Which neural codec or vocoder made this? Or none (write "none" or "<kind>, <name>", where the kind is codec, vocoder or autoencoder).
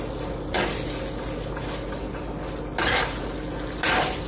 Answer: none